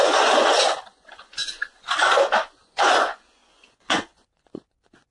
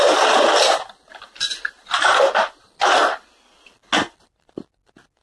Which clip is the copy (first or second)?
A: first